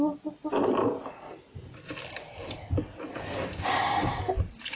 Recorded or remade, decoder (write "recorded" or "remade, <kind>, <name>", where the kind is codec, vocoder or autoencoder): recorded